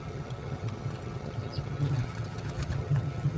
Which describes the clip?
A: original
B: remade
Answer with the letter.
B